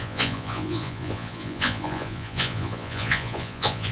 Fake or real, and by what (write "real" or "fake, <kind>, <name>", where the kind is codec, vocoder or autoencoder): fake, vocoder, Vocos